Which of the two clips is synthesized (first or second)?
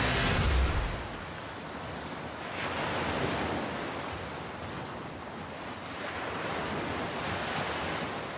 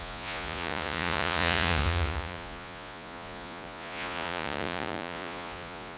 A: second